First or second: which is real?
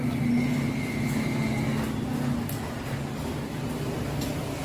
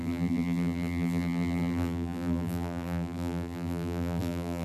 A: first